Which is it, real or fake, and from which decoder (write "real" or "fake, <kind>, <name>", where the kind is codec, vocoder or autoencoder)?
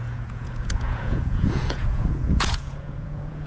fake, vocoder, Vocos